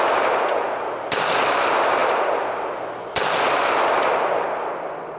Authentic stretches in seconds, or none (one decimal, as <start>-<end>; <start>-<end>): 0.0-5.2